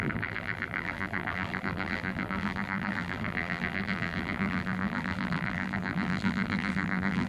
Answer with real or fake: fake